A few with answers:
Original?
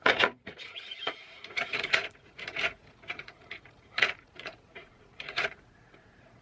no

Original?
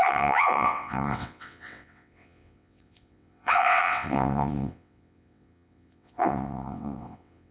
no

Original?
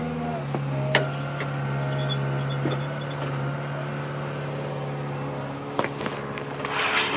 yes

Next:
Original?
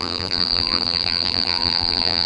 no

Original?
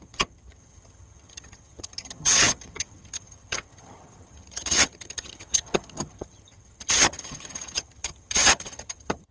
no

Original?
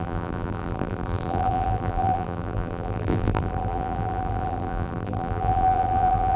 no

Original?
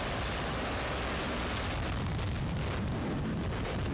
yes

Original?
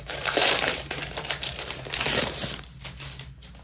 no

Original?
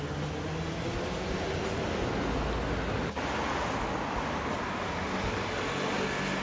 yes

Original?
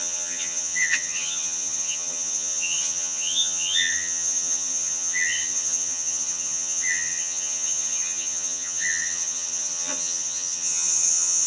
no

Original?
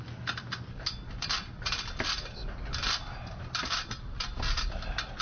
yes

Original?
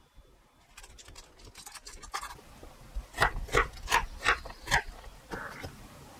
yes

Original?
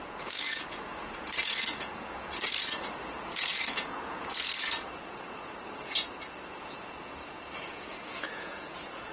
no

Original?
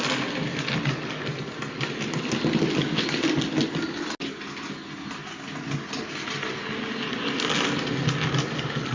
yes